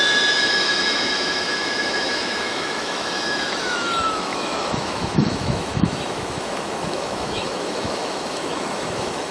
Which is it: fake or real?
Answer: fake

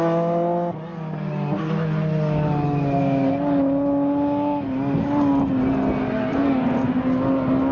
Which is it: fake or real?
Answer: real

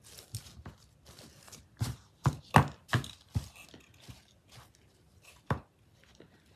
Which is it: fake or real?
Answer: real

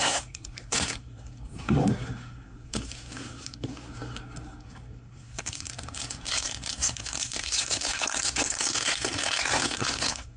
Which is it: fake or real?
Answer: fake